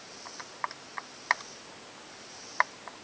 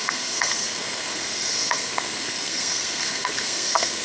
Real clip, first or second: first